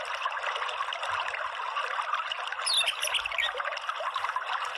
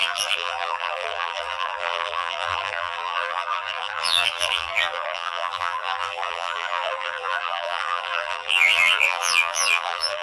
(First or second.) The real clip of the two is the first